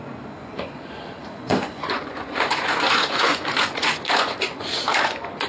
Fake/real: fake